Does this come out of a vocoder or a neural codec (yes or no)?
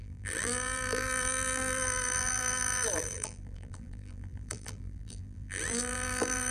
yes